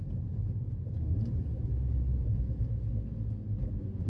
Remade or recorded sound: recorded